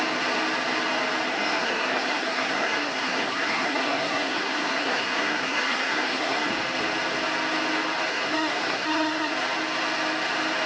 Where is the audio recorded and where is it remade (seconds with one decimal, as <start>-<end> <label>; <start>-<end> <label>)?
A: 0.0-1.3 recorded; 1.3-6.5 remade; 6.5-8.1 recorded; 8.1-9.3 remade; 9.3-10.7 recorded